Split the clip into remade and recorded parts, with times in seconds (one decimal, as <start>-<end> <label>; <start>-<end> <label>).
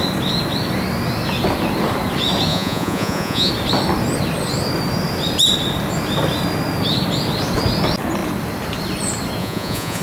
0.0-2.5 recorded; 2.5-3.5 remade; 3.5-9.4 recorded; 9.4-10.0 remade